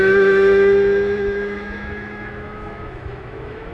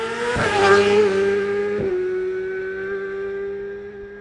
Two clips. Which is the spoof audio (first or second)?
first